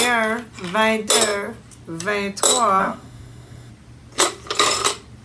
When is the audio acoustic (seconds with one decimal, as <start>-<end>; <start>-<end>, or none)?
0.0-2.8; 3.7-5.2